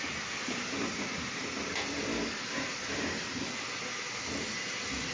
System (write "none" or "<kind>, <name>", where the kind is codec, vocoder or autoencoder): none